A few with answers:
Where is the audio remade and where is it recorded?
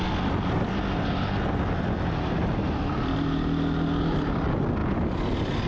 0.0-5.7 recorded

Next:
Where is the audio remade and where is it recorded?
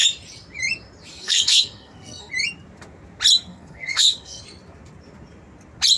0.0-1.1 recorded; 1.1-2.3 remade; 2.3-3.5 recorded; 3.5-4.4 remade; 4.4-6.0 recorded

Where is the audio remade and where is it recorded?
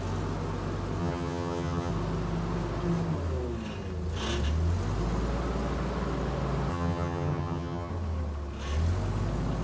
0.0-1.0 recorded; 1.0-1.9 remade; 1.9-6.7 recorded; 6.7-7.9 remade; 7.9-9.6 recorded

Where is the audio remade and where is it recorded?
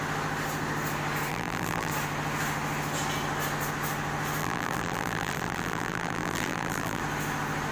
0.0-1.3 recorded; 1.3-1.9 remade; 1.9-4.4 recorded; 4.4-7.0 remade; 7.0-7.7 recorded